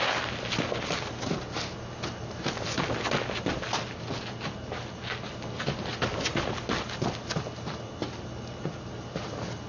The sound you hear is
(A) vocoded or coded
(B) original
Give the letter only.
B